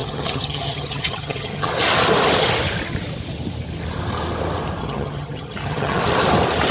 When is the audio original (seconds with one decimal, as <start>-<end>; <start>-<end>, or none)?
1.7-4.8; 6.0-6.7